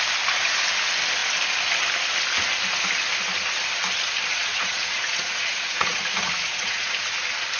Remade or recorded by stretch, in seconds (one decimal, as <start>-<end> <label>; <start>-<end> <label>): 0.0-4.3 recorded; 4.3-7.1 remade; 7.1-7.6 recorded

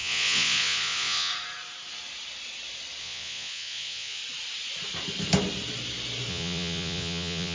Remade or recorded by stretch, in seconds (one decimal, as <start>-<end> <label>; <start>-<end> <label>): 0.0-1.3 remade; 1.3-3.0 recorded; 3.0-4.2 remade; 4.2-6.3 recorded; 6.3-7.5 remade